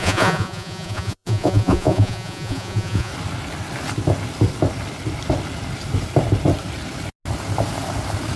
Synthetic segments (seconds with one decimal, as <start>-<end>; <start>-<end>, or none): 0.0-3.1